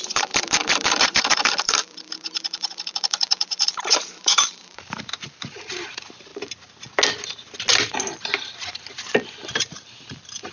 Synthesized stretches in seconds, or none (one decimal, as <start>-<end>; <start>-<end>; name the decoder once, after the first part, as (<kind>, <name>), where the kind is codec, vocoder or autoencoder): 0.0-6.3 (vocoder, BigVGAN v2); 9.6-10.5